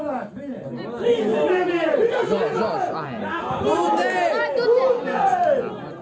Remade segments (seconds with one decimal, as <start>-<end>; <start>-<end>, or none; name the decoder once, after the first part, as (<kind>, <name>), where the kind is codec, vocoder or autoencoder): none

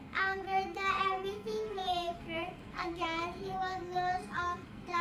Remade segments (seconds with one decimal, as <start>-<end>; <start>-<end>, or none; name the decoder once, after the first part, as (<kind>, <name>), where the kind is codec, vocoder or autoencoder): 0.0-5.0 (codec, SNAC)

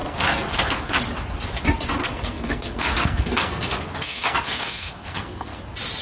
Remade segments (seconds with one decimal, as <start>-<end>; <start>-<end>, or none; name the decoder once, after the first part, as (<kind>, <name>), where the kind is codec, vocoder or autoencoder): 0.0-1.0 (codec, SNAC); 2.0-5.6

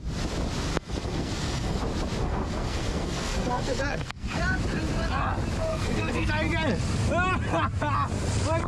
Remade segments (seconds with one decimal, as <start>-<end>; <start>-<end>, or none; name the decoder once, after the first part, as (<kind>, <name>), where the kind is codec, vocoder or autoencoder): 0.7-1.8 (codec, SNAC); 2.2-4.4; 5.7-6.3

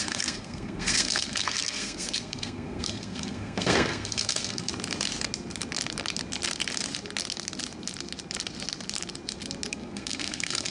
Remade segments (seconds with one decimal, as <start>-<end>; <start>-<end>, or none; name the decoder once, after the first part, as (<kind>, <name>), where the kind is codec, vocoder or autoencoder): 0.0-4.7 (codec, SNAC); 9.7-10.7

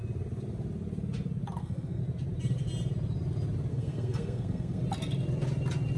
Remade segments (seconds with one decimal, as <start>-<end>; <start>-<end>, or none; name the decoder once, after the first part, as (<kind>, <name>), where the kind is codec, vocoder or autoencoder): 1.6-2.0 (codec, SNAC); 3.7-4.8

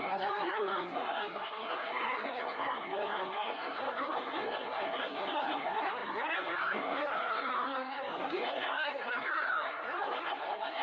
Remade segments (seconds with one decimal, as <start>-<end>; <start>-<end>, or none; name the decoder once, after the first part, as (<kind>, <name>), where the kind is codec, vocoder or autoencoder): 0.0-10.8 (codec, SNAC)

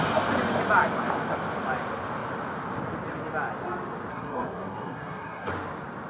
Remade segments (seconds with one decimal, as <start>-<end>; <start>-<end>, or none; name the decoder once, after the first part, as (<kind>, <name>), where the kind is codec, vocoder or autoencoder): 4.1-5.5 (codec, SNAC)